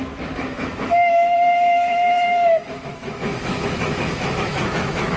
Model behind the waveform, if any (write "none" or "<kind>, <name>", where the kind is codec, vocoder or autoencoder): autoencoder, DAC-VAE